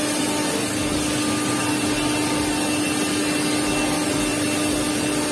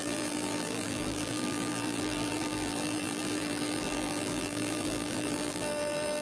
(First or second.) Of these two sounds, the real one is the first